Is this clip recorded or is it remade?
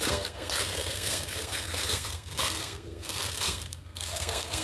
remade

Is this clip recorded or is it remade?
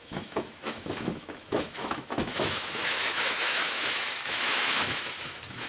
remade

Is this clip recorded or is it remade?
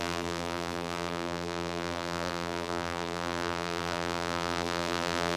remade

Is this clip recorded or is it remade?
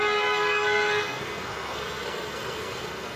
remade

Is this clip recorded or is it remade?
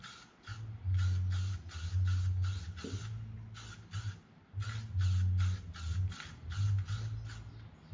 recorded